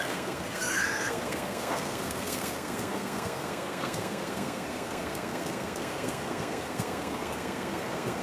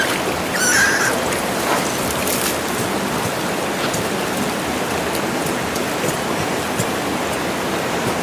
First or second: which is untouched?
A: second